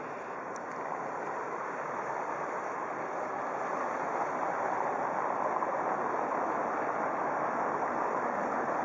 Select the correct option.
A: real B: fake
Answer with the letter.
A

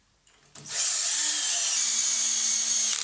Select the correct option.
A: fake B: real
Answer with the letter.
B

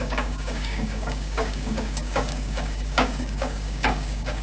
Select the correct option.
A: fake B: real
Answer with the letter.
A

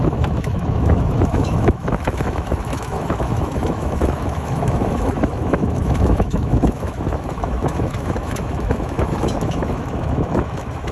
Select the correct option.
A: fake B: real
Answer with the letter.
A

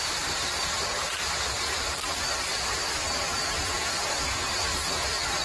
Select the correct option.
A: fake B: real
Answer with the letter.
A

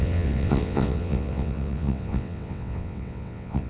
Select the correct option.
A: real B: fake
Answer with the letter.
B